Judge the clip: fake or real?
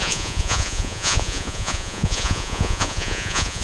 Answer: fake